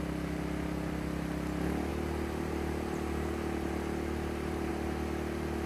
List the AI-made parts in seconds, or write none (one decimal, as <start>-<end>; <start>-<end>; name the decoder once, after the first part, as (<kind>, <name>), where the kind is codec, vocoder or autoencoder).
1.9-4.7 (vocoder, BigVGAN v2)